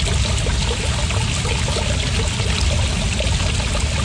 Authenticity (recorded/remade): recorded